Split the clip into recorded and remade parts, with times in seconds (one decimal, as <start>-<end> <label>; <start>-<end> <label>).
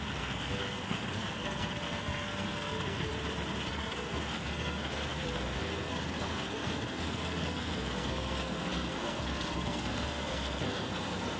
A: 0.0-3.1 remade; 3.1-3.7 recorded; 3.7-11.4 remade